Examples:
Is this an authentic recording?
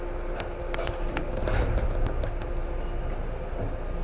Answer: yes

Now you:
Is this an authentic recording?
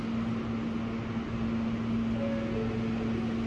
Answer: yes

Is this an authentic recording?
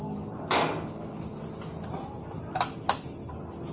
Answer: yes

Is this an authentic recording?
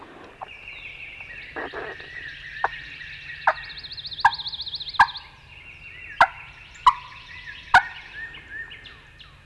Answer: yes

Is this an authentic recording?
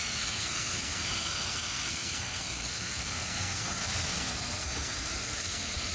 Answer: no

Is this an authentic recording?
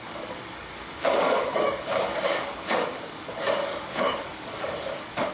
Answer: no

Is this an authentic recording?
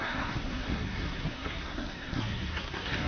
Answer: no